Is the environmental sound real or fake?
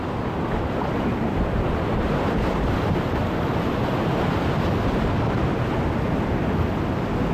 real